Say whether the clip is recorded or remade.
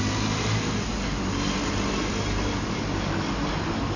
recorded